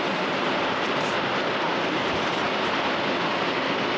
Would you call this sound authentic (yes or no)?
yes